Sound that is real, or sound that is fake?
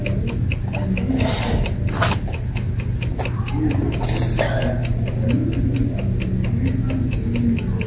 real